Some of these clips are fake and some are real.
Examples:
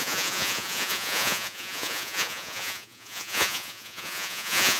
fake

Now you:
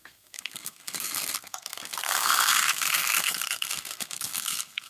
fake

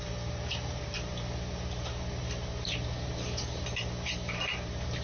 fake